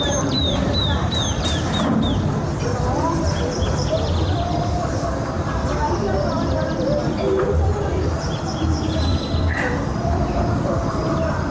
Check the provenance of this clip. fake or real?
fake